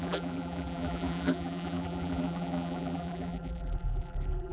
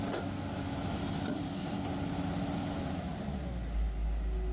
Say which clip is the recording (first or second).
second